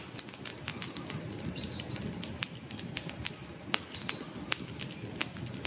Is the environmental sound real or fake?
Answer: real